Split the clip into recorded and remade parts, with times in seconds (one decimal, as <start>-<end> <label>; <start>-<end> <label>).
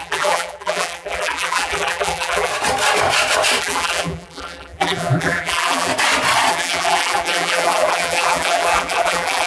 0.0-2.5 remade; 2.5-3.6 recorded; 3.6-5.9 remade; 5.9-6.5 recorded; 6.5-9.5 remade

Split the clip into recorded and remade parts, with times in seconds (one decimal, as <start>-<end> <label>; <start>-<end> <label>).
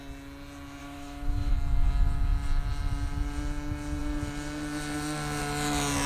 0.0-0.8 recorded; 0.8-1.5 remade; 1.5-6.1 recorded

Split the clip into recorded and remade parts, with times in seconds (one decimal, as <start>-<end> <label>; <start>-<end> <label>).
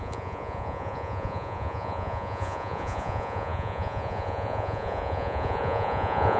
0.0-6.4 remade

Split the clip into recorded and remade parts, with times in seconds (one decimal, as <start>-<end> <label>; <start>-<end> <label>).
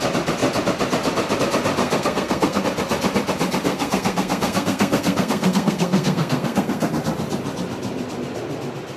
0.0-1.8 recorded; 1.8-2.6 remade; 2.6-3.7 recorded; 3.7-6.9 remade; 6.9-9.0 recorded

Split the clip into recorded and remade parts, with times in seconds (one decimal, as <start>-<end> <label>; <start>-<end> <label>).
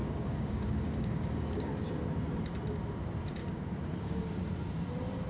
0.0-1.7 remade; 1.7-3.4 recorded; 3.4-4.2 remade; 4.2-5.3 recorded